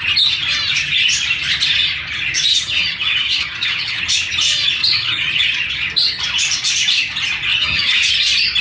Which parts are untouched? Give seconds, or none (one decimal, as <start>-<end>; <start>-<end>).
0.0-2.5; 4.0-4.8; 5.5-7.5; 8.1-8.6

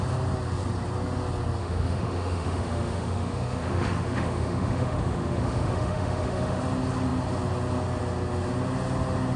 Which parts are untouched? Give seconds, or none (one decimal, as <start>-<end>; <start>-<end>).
0.0-1.6; 6.6-9.4

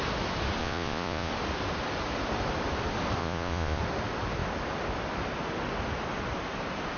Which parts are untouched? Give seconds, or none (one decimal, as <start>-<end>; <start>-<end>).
0.0-0.6; 1.3-3.2; 3.8-7.0

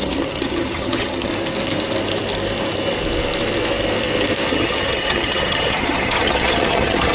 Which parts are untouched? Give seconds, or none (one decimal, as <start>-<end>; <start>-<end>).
1.3-4.5

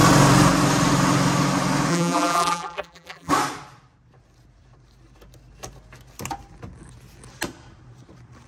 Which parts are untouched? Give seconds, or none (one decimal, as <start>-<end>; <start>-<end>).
0.0-1.9; 3.3-8.5